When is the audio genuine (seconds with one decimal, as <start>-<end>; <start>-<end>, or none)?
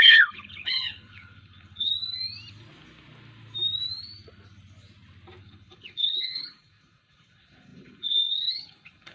1.9-5.4